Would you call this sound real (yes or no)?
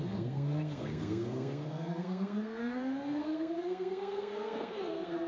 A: no